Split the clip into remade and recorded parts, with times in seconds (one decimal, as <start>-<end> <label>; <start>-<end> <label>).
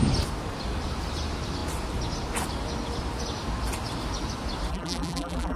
0.0-4.7 recorded; 4.7-5.6 remade